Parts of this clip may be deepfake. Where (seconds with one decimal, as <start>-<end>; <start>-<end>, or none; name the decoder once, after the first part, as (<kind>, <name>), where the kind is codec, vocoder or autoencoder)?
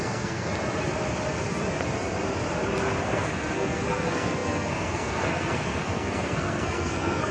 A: 0.0-0.5 (codec, SNAC); 3.0-7.3